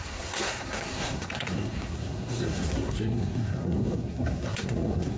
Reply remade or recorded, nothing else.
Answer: remade